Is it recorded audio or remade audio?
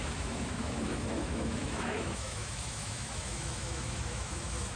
remade